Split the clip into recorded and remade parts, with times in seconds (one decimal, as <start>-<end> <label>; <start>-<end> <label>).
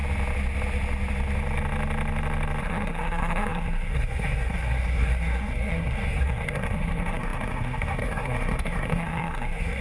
0.0-2.6 recorded; 2.6-9.8 remade